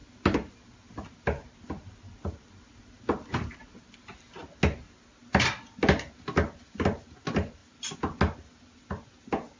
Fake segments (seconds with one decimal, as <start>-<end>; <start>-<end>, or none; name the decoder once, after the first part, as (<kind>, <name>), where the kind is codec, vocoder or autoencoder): none